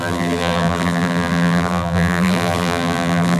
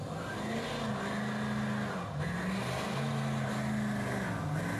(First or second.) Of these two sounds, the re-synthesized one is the first